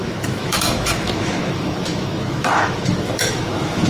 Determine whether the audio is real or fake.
fake